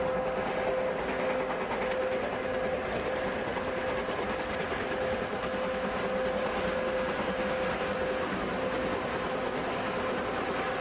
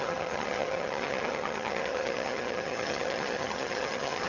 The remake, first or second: second